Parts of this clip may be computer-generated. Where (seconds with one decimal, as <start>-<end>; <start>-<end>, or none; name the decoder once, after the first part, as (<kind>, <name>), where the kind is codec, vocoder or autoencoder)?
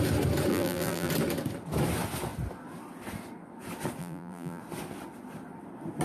0.5-1.1 (vocoder, BigVGAN v2); 4.0-4.6